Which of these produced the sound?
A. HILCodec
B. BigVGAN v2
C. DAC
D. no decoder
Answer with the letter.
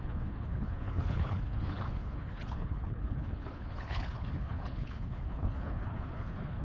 A